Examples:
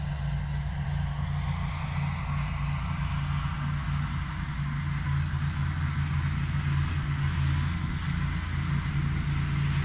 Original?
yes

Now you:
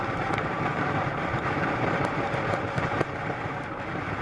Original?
no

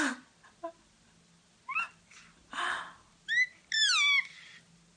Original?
yes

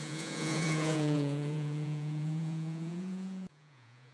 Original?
no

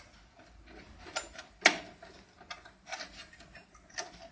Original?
yes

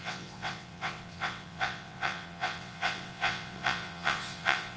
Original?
no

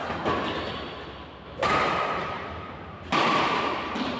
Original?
yes